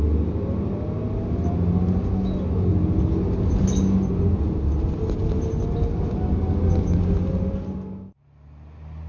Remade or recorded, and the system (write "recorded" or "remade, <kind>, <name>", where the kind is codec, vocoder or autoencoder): recorded